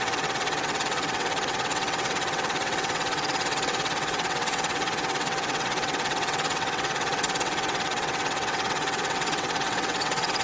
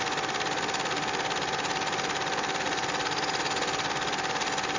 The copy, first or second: first